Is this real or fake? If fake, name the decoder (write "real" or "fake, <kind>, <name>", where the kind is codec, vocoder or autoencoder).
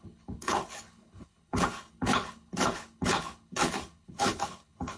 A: fake, codec, HILCodec